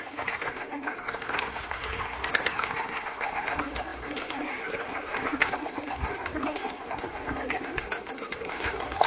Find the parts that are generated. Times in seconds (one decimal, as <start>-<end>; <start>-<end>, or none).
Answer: 0.0-9.1